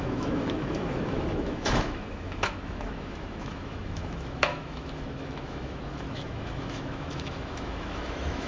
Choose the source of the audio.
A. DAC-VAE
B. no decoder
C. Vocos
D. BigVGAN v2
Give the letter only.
A